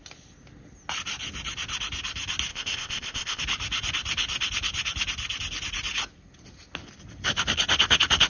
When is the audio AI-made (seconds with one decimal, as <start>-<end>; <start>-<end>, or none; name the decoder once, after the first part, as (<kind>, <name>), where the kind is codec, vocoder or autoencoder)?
2.5-3.4 (codec, ZipCodec)